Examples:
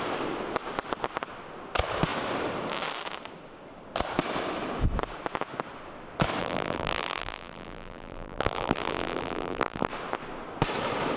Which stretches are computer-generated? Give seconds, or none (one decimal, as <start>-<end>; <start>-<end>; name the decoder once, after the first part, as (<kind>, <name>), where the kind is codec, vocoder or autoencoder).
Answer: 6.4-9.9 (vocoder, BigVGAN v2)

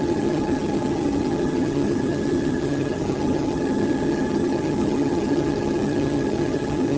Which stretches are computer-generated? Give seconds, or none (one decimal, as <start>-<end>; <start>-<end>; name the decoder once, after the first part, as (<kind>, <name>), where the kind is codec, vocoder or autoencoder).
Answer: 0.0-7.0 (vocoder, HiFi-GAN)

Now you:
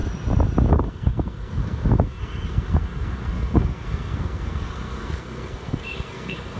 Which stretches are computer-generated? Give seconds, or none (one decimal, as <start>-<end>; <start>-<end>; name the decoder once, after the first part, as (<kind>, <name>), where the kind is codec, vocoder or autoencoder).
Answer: 0.7-6.6 (codec, SNAC)